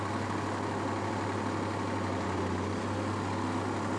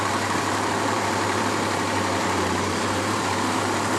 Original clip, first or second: first